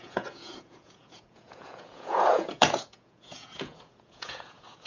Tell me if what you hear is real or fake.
fake